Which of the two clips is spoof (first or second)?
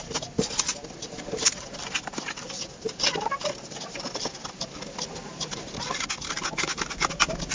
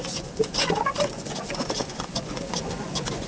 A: second